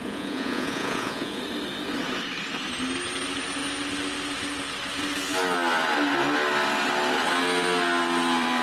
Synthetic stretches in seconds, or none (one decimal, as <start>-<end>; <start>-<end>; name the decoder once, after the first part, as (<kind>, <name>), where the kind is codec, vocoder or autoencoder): 0.0-1.4 (vocoder, Vocos)